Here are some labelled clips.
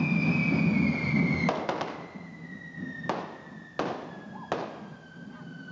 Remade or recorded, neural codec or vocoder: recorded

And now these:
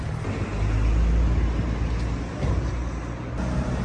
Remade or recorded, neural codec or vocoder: recorded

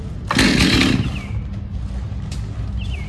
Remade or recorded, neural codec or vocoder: recorded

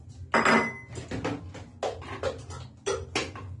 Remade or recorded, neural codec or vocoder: recorded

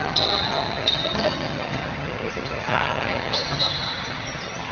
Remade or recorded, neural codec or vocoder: remade, vocoder, HiFi-GAN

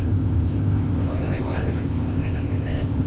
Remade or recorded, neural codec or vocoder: remade, codec, ZipCodec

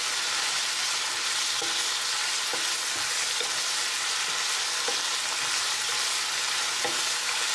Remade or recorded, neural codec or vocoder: recorded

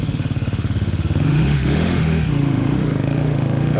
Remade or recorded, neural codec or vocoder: remade, autoencoder, DAC-VAE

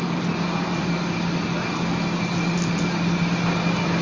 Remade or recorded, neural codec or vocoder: recorded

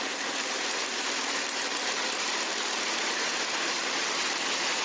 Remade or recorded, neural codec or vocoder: remade, vocoder, BigVGAN v2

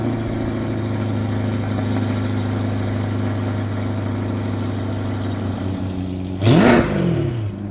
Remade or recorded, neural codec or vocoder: recorded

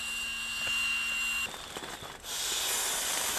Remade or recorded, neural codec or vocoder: recorded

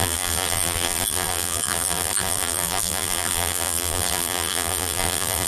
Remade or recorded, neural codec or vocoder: remade, vocoder, BigVGAN v2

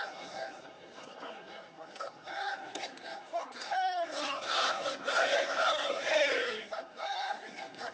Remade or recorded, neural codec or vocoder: remade, codec, SNAC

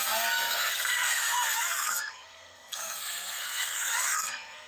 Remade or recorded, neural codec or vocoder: remade, codec, SNAC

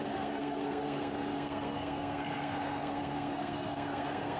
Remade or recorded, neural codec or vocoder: remade, codec, SNAC